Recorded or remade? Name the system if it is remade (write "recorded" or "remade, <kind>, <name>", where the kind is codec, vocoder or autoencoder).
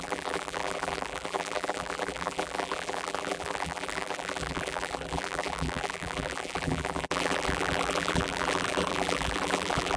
remade, vocoder, BigVGAN v2